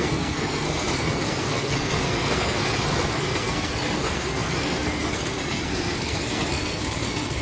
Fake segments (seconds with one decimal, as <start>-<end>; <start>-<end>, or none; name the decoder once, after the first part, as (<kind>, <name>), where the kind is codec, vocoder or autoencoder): 0.0-7.4 (codec, SNAC)